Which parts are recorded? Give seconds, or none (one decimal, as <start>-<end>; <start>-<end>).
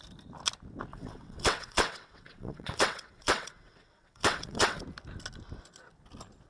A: 0.0-0.9; 4.8-6.5